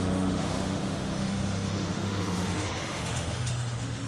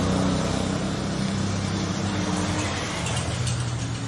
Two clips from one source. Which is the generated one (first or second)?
first